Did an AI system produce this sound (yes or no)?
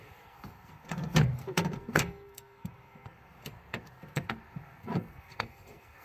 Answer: yes